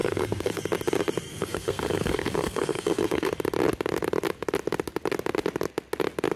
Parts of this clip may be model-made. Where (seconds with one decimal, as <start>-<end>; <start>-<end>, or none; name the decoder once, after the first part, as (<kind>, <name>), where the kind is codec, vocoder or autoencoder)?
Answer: 0.0-0.6 (codec, SNAC); 1.3-3.3